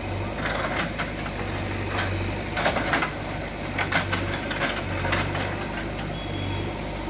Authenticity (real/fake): real